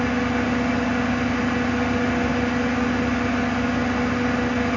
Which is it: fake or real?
real